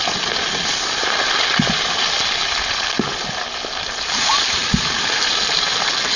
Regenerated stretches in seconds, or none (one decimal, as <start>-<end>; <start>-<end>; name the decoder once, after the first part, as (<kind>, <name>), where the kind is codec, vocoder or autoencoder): none